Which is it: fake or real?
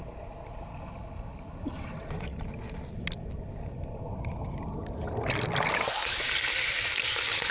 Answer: real